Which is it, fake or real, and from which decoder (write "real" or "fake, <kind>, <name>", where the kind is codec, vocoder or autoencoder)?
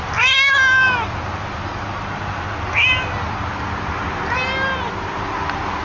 real